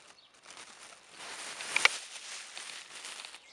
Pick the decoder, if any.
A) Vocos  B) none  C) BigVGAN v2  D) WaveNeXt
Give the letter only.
B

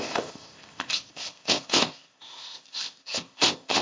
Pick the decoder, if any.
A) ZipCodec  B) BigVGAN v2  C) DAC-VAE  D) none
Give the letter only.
A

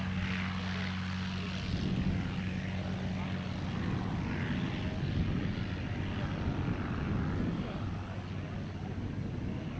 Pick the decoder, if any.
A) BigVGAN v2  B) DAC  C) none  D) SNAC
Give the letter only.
C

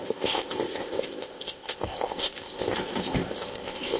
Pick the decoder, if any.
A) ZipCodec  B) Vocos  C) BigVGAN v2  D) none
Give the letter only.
A